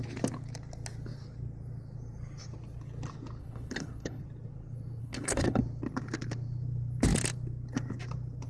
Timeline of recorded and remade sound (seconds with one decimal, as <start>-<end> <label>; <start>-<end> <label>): 0.0-3.4 recorded; 3.4-4.2 remade; 4.2-5.0 recorded; 5.0-5.6 remade; 5.6-8.5 recorded